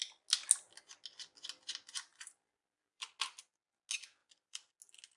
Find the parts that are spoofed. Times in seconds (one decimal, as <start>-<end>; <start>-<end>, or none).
2.1-3.1; 4.2-4.7